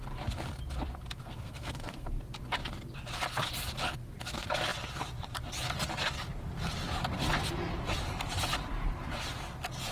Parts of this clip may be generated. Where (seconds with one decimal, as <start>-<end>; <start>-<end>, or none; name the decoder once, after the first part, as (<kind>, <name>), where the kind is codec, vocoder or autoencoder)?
1.2-2.2 (codec, SNAC)